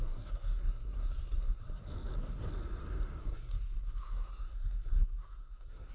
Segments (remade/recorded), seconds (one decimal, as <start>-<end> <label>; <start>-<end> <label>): 0.0-1.6 remade; 1.6-3.2 recorded; 3.2-5.9 remade